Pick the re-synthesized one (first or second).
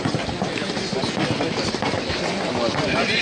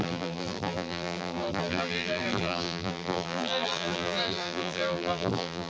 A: second